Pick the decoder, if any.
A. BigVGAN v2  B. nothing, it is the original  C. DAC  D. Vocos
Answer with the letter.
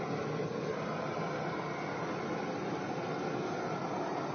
B